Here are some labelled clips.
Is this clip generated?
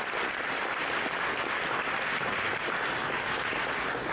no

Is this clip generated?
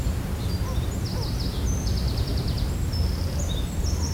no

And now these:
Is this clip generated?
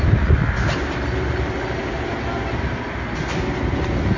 no